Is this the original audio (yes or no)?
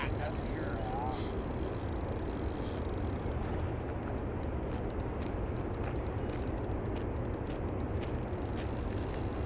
yes